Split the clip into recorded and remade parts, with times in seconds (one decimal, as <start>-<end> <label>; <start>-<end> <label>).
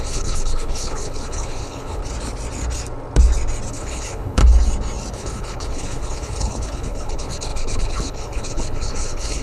0.0-2.0 remade; 2.0-3.7 recorded; 3.7-4.4 remade; 4.4-5.1 recorded; 5.1-9.4 remade